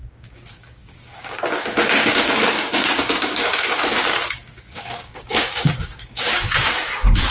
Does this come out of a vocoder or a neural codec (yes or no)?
yes